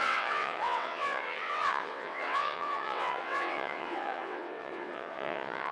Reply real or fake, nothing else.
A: fake